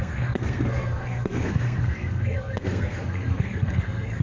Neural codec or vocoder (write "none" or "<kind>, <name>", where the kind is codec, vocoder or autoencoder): codec, SNAC